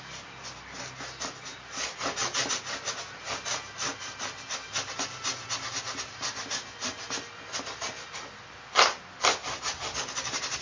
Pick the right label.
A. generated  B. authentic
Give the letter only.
B